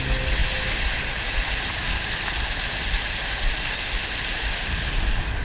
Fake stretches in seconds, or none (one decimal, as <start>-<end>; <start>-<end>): none